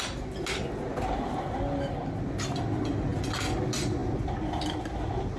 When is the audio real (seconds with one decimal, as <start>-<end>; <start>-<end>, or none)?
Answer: 0.0-5.4